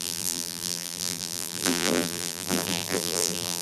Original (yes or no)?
no